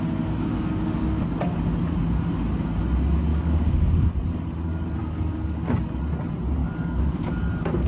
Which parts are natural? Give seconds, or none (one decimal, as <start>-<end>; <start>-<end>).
0.0-0.5; 1.2-3.3; 4.1-5.0; 5.6-6.6; 7.3-7.9